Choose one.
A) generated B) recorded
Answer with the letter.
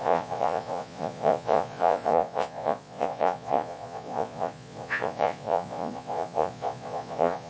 A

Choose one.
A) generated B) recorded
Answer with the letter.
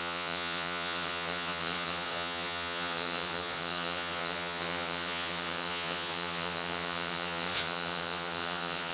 A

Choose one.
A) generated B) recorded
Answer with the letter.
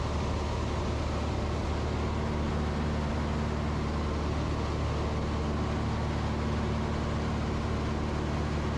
B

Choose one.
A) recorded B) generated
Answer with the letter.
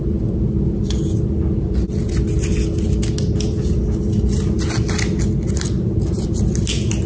A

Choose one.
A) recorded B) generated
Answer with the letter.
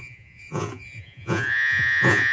B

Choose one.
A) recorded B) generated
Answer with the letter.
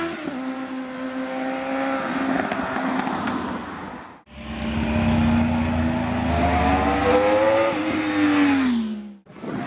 A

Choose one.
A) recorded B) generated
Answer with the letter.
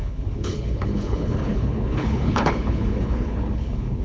B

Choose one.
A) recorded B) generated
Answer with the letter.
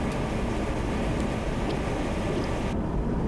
A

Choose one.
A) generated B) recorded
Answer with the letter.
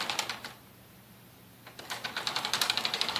A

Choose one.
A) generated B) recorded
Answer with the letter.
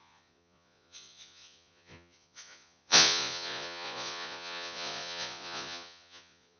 A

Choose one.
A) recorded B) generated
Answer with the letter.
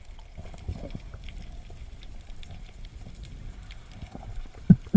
A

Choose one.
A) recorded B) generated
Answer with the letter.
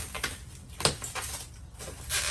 A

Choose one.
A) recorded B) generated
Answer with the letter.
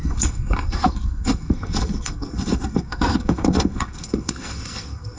B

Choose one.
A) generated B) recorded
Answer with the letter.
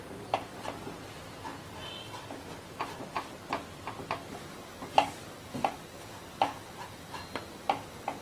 B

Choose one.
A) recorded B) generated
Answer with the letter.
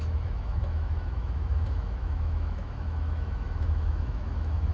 B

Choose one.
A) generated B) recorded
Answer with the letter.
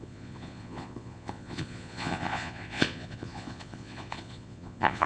A